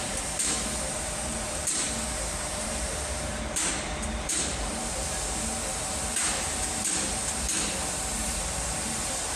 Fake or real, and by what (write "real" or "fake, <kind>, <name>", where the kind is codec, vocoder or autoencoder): fake, vocoder, BigVGAN v2